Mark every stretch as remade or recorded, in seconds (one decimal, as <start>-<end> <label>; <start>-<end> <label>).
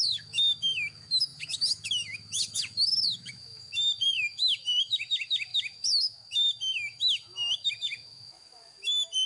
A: 0.0-9.3 remade